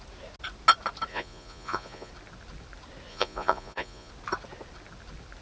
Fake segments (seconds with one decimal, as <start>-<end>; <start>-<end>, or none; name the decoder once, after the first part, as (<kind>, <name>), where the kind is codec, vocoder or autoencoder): 1.1-2.1 (vocoder, Vocos); 3.1-4.1